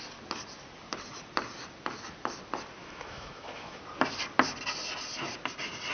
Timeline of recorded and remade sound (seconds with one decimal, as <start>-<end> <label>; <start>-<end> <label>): 0.0-2.8 recorded; 2.8-3.8 remade; 3.8-5.9 recorded